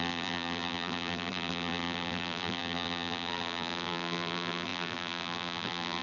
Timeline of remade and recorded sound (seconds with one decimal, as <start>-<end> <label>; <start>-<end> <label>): 0.0-6.0 remade